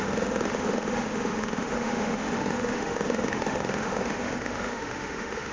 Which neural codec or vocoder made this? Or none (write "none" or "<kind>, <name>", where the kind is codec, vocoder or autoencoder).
autoencoder, DAC-VAE